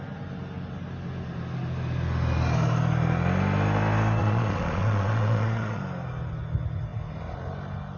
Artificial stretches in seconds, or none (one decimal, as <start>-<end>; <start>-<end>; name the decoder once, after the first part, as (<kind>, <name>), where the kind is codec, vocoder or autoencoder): 4.2-5.8 (vocoder, Vocos)